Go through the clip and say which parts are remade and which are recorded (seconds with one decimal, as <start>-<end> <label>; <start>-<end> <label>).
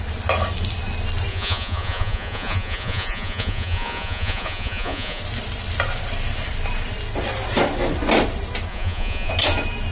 0.0-1.3 recorded; 1.3-5.2 remade; 5.2-8.7 recorded; 8.7-9.3 remade; 9.3-9.9 recorded